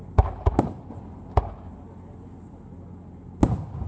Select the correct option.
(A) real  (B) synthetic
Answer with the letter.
A